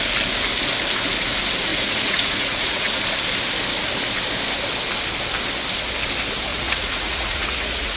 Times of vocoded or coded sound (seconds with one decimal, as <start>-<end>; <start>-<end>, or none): 1.7-3.0; 6.5-8.0